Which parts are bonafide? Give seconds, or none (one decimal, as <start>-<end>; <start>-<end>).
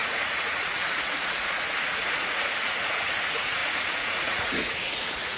none